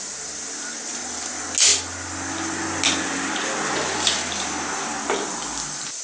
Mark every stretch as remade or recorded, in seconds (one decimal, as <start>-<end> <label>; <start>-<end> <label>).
0.0-6.0 recorded